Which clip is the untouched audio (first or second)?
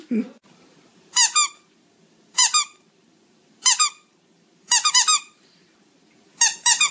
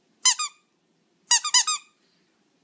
second